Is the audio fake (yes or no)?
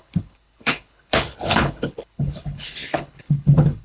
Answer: yes